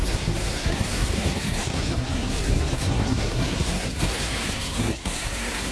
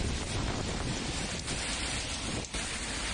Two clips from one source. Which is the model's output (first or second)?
first